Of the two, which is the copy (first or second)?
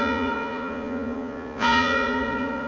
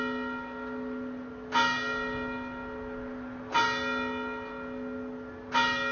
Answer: first